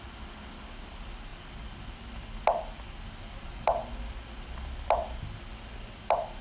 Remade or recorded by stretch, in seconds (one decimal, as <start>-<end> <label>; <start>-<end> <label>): 0.0-1.3 remade; 1.3-3.2 recorded; 3.2-6.4 remade